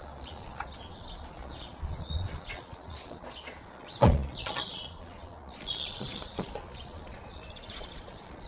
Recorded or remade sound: remade